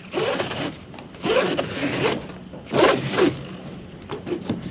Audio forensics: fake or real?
real